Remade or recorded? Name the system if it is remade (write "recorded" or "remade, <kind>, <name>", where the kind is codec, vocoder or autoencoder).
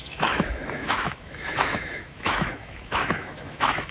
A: remade, autoencoder, DAC-VAE